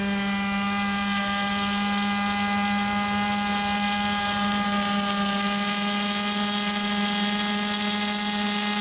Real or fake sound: real